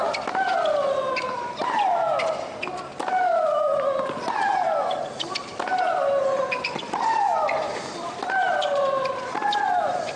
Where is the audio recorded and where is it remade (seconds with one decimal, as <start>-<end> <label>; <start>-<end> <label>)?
0.0-10.2 recorded